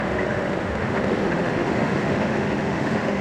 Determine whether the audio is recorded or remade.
remade